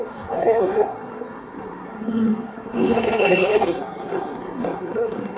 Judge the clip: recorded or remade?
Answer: remade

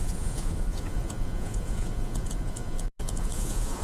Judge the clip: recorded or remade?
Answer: remade